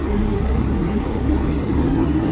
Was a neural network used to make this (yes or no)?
yes